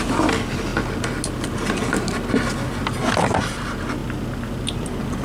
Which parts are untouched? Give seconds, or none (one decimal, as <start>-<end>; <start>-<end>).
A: 0.0-5.2